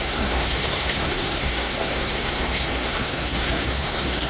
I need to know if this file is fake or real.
fake